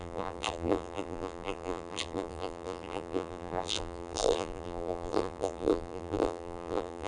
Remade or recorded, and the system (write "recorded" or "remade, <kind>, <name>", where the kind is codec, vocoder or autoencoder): remade, vocoder, BigVGAN v2